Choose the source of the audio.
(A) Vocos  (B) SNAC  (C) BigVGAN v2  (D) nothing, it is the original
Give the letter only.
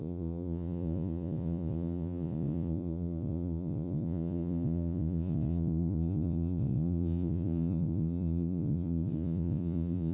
A